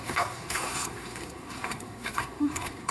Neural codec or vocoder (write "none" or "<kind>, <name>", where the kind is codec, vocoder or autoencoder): codec, SNAC